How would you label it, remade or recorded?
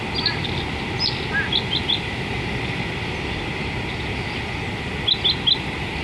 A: recorded